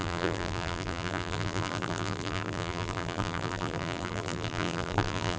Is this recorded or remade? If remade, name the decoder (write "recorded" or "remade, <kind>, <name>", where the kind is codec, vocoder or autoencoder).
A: remade, vocoder, BigVGAN v2